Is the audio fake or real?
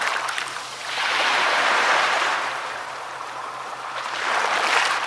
fake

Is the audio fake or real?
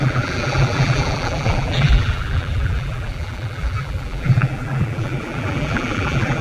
fake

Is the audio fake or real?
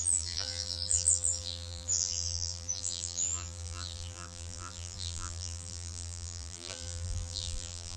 fake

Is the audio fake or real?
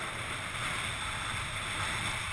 real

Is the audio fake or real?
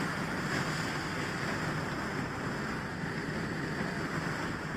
real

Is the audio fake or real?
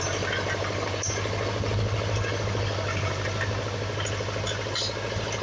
real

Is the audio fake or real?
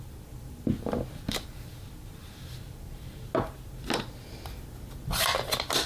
real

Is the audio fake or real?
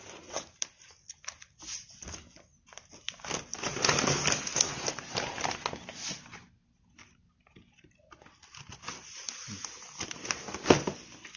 real